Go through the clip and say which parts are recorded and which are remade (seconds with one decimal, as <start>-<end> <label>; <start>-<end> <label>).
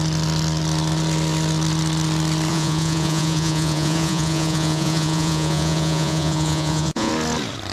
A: 0.0-2.5 recorded; 2.5-7.1 remade; 7.1-7.7 recorded